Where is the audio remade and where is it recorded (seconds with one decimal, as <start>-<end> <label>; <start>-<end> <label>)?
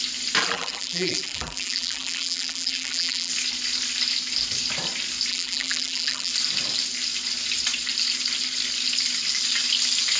0.0-0.4 recorded; 0.4-3.3 remade; 3.3-5.3 recorded; 5.3-6.3 remade; 6.3-10.2 recorded